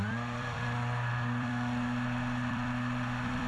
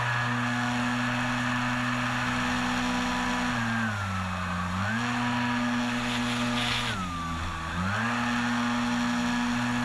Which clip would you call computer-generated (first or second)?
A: first